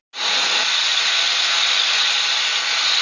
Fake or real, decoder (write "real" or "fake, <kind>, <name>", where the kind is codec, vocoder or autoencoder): real